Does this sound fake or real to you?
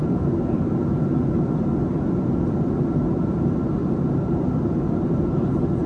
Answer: real